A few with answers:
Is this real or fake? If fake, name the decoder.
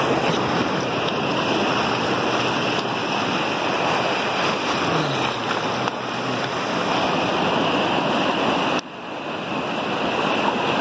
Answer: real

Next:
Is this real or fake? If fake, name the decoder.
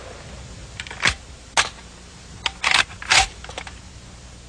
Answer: real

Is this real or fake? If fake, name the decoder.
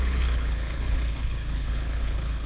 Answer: fake, codec, HILCodec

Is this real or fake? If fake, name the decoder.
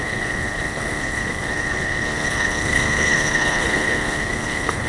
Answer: fake, codec, HILCodec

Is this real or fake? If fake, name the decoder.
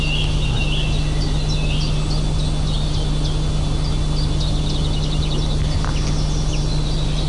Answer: real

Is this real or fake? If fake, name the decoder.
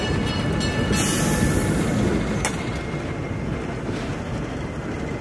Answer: real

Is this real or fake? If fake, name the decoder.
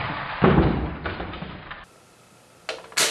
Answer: real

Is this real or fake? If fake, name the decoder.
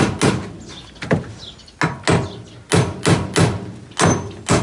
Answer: real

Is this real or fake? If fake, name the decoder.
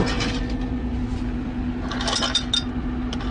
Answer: real